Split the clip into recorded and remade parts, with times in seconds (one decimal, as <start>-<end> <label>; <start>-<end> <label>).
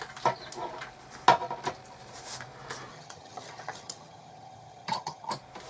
0.0-2.9 recorded; 2.9-5.3 remade; 5.3-5.7 recorded